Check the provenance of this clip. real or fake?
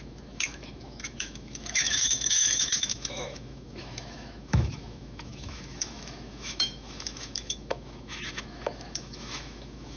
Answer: fake